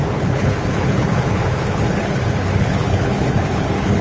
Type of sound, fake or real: fake